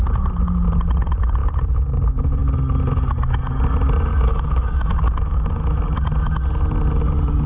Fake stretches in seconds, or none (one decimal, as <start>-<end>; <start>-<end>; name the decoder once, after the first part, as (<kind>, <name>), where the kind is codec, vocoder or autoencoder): 4.1-5.8 (autoencoder, DAC-VAE)